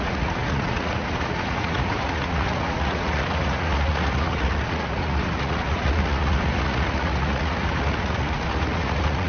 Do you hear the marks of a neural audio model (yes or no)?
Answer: yes